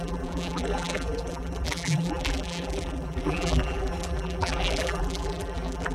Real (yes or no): no